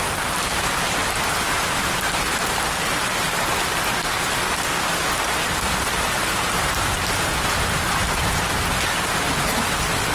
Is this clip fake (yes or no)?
no